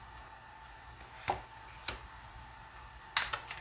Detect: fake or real real